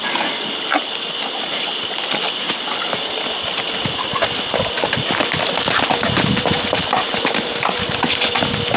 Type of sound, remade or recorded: recorded